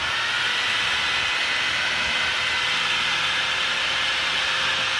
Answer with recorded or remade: recorded